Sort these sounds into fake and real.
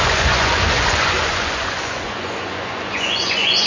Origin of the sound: fake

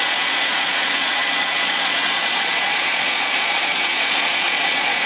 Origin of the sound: fake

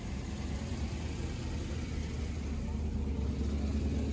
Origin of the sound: real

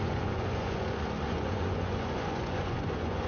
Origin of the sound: fake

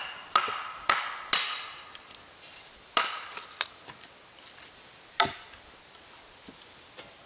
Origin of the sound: real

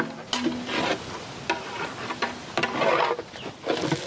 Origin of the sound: real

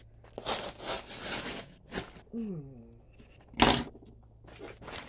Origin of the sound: real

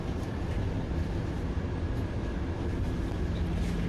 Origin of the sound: real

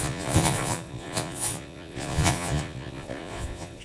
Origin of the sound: fake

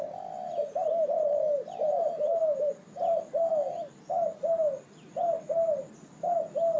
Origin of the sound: real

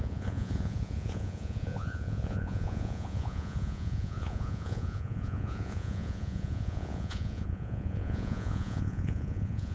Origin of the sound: fake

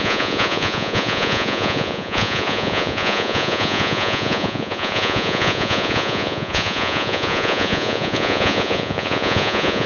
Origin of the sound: fake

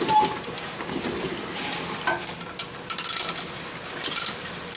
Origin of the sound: real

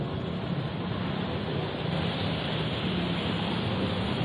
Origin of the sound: real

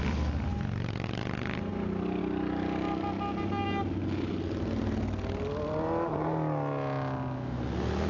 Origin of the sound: real